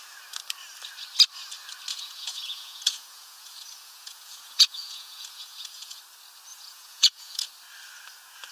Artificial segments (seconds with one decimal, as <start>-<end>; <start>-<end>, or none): 1.9-6.0; 6.5-7.5